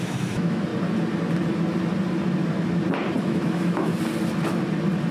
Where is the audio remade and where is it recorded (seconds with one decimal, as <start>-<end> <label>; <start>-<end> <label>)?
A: 0.0-0.7 remade; 0.7-3.2 recorded; 3.2-3.9 remade; 3.9-5.1 recorded